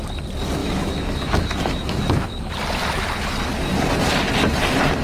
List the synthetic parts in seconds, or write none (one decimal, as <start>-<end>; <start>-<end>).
0.6-2.5